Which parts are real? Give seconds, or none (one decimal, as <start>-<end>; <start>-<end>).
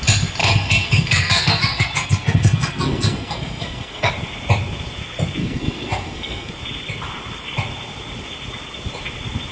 0.0-0.4; 4.1-5.4; 6.5-9.5